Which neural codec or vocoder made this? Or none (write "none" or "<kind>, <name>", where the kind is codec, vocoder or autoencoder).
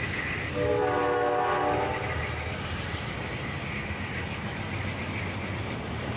none